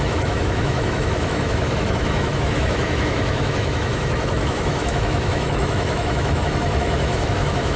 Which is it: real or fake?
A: fake